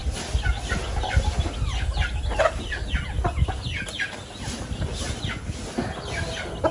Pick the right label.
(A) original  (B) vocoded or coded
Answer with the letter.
A